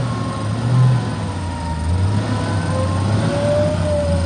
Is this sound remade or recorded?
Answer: recorded